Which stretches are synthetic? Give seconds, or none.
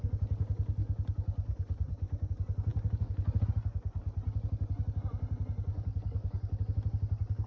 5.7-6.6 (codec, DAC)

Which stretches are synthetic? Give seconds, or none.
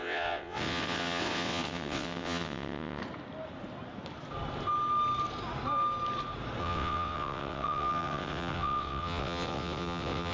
0.0-3.0 (vocoder, WaveNeXt); 6.6-10.3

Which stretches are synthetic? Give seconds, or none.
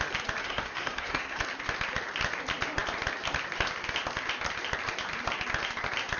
0.4-1.4 (codec, SNAC)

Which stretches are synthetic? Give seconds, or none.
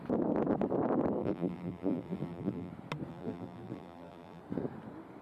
1.2-2.7 (vocoder, BigVGAN v2); 3.1-4.4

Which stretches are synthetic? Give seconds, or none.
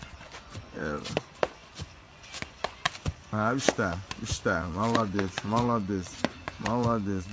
0.0-7.3 (vocoder, Vocos)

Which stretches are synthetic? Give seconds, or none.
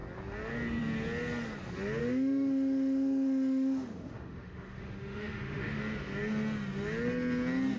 2.0-5.8 (autoencoder, DAC-VAE)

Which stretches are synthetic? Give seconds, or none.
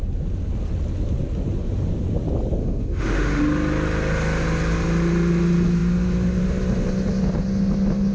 2.6-3.4 (autoencoder, DAC-VAE)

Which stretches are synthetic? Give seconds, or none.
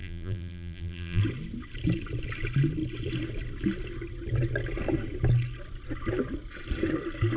0.0-1.2 (vocoder, BigVGAN v2)